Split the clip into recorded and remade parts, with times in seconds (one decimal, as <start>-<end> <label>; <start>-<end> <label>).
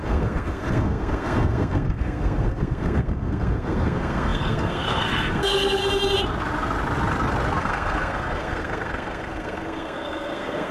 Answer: 0.0-5.8 remade; 5.8-7.6 recorded; 7.6-10.7 remade